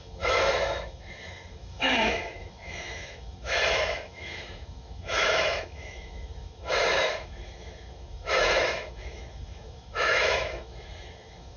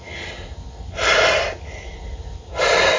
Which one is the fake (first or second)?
first